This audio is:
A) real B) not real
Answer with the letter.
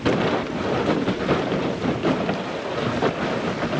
A